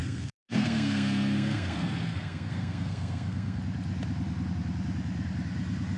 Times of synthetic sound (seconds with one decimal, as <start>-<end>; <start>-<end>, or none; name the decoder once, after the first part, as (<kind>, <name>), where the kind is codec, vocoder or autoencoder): 0.0-3.6 (codec, SNAC)

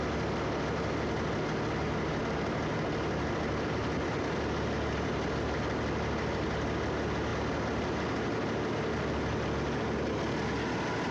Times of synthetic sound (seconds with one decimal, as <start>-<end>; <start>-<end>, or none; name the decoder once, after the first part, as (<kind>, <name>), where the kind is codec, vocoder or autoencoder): none

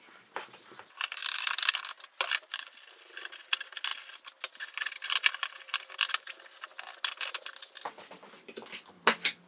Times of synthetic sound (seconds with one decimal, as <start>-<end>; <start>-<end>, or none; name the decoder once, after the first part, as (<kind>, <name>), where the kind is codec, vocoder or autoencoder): none

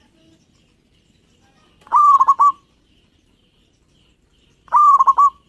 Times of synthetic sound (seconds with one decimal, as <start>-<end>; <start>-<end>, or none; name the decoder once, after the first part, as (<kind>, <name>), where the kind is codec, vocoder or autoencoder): 1.9-5.5 (vocoder, BigVGAN v2)

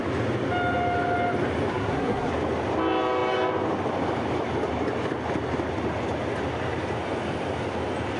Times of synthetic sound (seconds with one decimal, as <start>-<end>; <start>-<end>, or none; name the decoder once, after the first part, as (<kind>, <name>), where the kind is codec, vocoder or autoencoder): 1.7-2.3 (codec, SNAC)

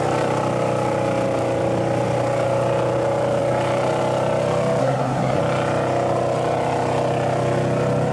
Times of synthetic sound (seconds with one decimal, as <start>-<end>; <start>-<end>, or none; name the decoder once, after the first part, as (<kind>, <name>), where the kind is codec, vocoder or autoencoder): 4.8-5.4 (codec, SNAC)